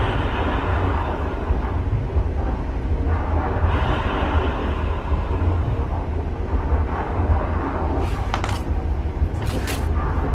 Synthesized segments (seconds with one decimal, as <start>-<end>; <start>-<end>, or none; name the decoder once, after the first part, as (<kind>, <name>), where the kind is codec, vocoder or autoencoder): 0.7-1.7 (codec, DAC); 4.6-5.8; 6.9-7.9